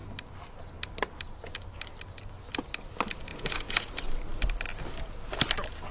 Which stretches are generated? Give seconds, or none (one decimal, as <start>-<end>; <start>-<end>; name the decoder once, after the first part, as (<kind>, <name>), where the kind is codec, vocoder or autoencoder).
3.3-3.9 (vocoder, Vocos)